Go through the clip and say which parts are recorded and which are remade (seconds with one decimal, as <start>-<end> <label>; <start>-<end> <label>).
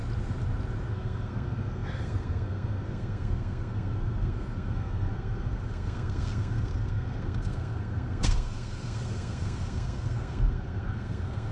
0.0-0.9 recorded; 0.9-11.5 remade